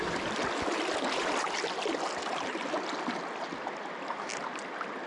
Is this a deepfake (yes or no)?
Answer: no